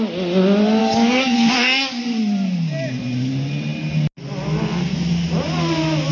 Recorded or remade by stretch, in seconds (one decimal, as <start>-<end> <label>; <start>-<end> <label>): 0.0-0.8 recorded; 0.8-2.0 remade; 2.0-6.1 recorded